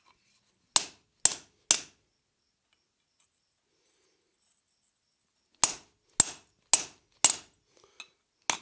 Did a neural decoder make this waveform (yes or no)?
no